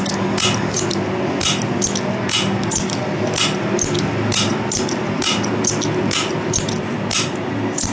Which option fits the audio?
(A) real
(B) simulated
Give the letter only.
A